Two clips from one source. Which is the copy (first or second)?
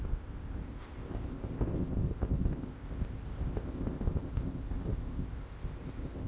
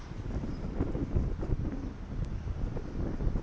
first